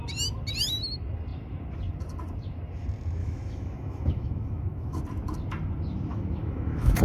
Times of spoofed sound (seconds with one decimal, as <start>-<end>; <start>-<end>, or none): 3.2-5.0; 6.1-7.0